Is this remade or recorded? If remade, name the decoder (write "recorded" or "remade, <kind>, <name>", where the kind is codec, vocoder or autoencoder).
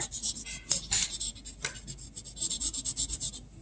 recorded